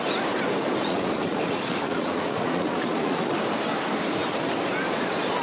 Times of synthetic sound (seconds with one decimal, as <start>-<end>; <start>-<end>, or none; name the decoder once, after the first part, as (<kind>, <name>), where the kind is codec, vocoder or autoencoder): 0.8-3.3 (vocoder, Vocos)